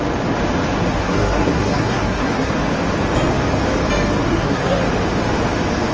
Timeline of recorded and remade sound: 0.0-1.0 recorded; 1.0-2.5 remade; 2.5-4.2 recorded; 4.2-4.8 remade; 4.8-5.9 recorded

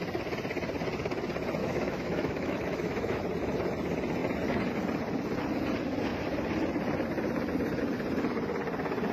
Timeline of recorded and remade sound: 0.0-1.6 recorded; 1.6-3.2 remade; 3.2-9.1 recorded

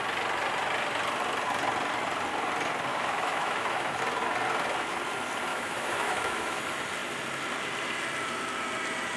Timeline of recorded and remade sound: 0.0-2.9 recorded; 2.9-4.0 remade; 4.0-5.5 recorded; 5.5-6.6 remade; 6.6-9.2 recorded

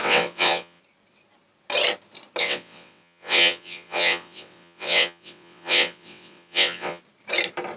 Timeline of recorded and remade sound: 0.0-0.8 remade; 0.8-2.4 recorded; 2.4-7.0 remade; 7.0-7.8 recorded

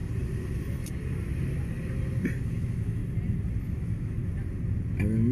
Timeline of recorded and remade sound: 0.0-2.4 recorded; 2.4-3.0 remade; 3.0-3.6 recorded; 3.6-4.2 remade; 4.2-5.3 recorded